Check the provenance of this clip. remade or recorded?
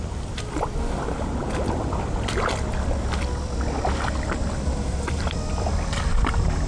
recorded